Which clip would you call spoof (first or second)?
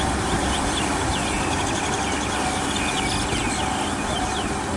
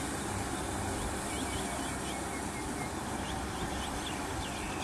first